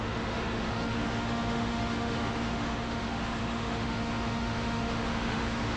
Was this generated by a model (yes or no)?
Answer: yes